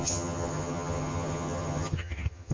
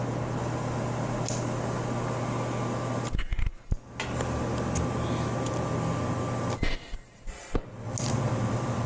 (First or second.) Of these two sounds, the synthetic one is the first